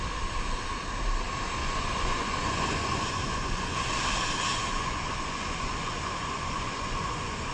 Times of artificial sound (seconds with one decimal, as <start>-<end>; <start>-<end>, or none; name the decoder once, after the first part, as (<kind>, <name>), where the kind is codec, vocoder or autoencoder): 1.6-3.9 (vocoder, Vocos); 4.5-7.5